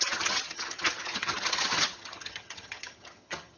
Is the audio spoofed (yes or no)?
yes